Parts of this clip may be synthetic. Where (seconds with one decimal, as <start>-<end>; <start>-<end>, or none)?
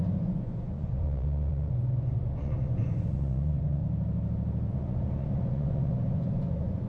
0.0-3.8; 4.7-6.9